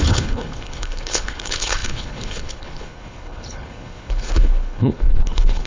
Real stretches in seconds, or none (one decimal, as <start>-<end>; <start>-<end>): none